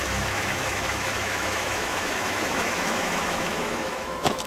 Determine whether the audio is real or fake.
fake